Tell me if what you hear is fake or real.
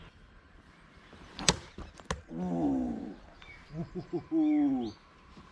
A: real